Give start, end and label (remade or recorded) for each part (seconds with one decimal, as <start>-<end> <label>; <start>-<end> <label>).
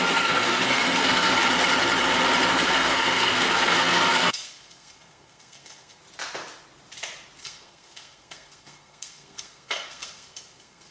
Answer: 0.0-1.3 remade; 1.3-2.5 recorded; 2.5-6.0 remade; 6.0-7.4 recorded; 7.4-10.9 remade